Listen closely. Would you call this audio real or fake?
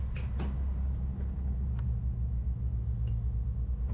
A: real